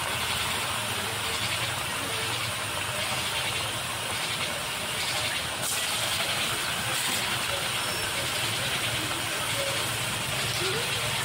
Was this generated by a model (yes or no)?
no